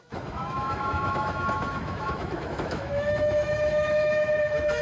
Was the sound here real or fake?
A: fake